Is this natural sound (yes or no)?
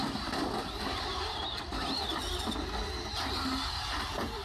yes